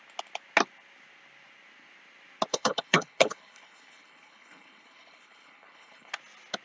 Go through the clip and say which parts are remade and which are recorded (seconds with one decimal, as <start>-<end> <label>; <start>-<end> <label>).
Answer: 0.0-2.5 recorded; 2.5-6.1 remade; 6.1-6.6 recorded